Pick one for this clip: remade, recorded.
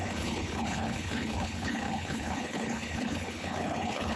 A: remade